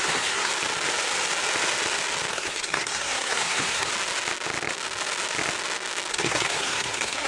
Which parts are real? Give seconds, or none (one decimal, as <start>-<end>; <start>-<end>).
0.5-2.3; 3.9-6.1